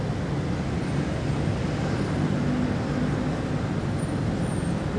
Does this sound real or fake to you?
real